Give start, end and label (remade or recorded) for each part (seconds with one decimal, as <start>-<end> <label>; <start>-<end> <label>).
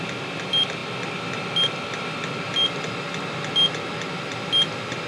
0.0-5.1 recorded